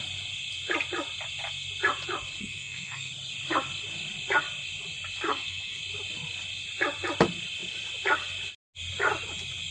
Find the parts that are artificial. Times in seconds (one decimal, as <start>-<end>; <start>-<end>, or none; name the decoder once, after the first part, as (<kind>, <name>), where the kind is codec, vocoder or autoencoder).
2.4-3.1 (codec, SNAC); 5.3-5.8